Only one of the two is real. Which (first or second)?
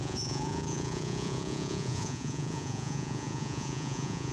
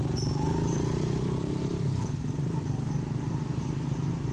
second